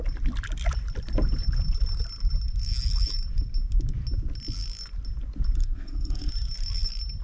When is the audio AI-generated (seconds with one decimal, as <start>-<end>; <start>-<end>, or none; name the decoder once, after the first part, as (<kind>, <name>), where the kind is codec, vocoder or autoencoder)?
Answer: 5.6-6.3 (codec, SNAC)